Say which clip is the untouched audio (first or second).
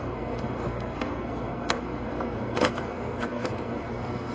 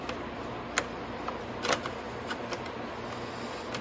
second